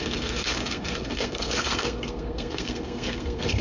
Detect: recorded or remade remade